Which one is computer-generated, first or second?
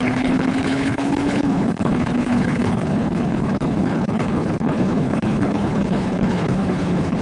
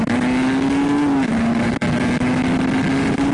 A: first